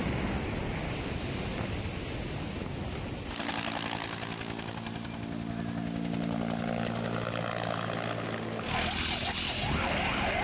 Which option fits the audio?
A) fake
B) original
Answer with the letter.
B